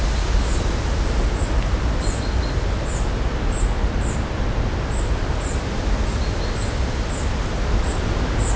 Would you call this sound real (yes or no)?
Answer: yes